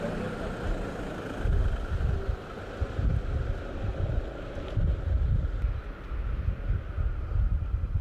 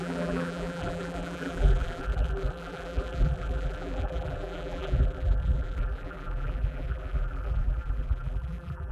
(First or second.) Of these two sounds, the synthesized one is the second